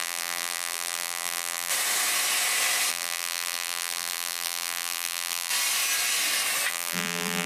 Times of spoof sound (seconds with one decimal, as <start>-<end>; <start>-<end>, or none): 0.0-1.7; 2.9-5.5; 6.7-7.5